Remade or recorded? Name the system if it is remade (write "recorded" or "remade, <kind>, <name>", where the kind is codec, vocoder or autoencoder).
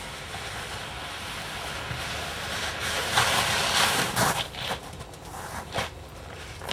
recorded